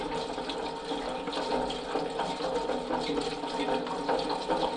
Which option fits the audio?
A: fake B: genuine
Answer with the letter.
B